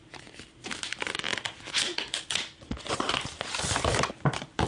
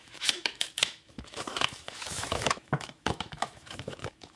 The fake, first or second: second